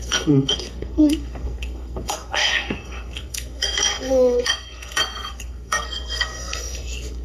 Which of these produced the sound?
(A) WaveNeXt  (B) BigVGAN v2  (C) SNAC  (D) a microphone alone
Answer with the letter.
C